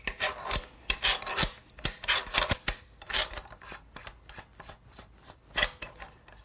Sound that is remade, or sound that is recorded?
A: recorded